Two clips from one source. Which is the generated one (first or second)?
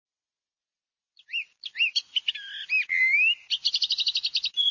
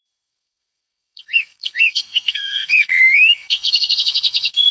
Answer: second